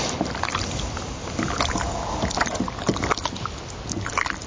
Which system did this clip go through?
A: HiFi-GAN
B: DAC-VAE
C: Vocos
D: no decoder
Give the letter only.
D